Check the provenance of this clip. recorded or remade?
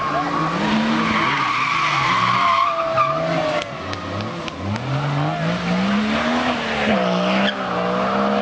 recorded